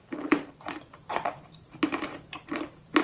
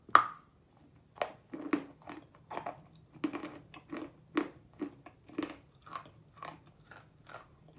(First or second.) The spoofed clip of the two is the first